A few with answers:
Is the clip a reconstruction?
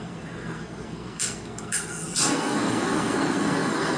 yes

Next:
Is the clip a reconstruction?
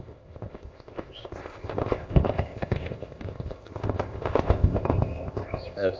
yes